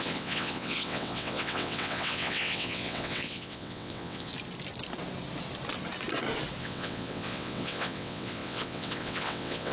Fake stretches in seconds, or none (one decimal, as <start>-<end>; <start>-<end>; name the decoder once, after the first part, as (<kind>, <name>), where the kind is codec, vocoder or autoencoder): 0.0-4.3 (vocoder, WaveNeXt); 6.6-9.7